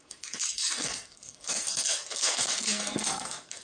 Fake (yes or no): yes